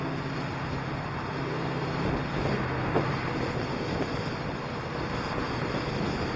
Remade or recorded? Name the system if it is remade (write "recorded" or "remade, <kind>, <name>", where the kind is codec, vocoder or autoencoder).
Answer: recorded